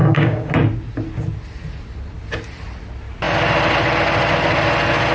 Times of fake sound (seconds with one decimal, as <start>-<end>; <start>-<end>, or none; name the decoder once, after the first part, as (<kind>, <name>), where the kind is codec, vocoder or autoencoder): 0.0-0.5 (codec, DAC)